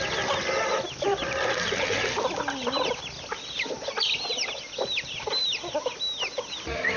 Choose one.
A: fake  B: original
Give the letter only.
B